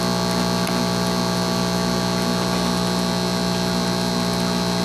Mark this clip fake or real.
real